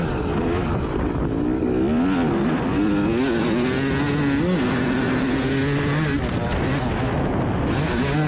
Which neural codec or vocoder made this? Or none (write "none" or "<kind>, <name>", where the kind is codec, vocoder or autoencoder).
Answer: none